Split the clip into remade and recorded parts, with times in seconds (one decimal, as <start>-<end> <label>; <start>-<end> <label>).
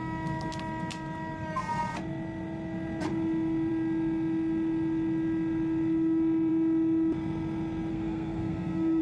0.0-7.9 recorded; 7.9-9.0 remade